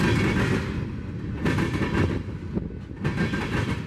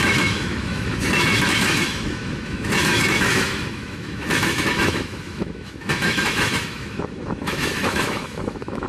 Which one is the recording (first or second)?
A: first